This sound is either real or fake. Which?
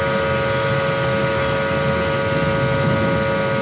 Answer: real